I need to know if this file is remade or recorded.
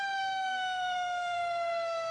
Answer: remade